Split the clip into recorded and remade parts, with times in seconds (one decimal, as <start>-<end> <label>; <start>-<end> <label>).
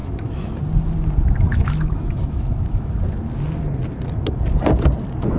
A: 0.0-0.6 remade; 0.6-1.5 recorded; 1.5-2.9 remade; 2.9-5.4 recorded